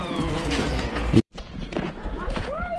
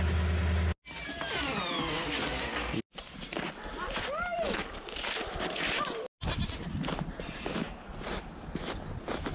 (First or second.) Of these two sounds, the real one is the second